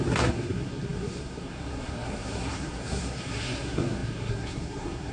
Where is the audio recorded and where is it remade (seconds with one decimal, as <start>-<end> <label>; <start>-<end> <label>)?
0.0-5.1 remade